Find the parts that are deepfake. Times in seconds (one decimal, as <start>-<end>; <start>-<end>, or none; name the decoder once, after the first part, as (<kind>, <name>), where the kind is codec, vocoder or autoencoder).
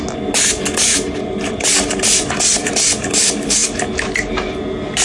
none